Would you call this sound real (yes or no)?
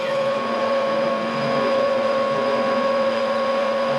no